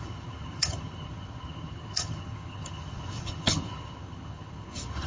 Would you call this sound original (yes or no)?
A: no